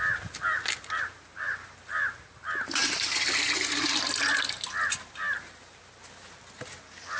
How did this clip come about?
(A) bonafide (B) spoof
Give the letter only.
A